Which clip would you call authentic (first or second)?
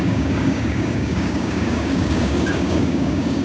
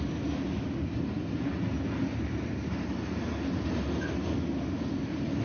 second